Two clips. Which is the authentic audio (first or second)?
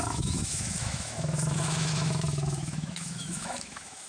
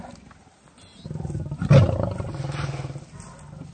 second